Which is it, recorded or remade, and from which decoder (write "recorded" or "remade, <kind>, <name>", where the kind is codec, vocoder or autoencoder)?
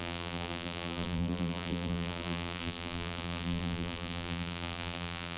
remade, vocoder, BigVGAN v2